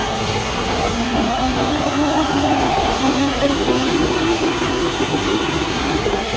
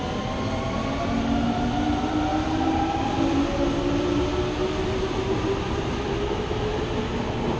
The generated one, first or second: first